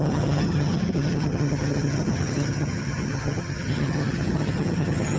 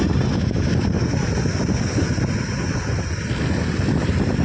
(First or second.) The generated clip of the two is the first